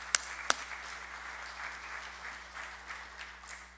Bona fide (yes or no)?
yes